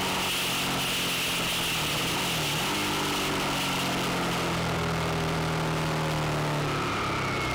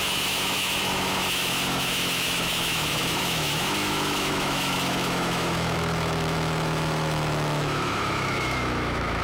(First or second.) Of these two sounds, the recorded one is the first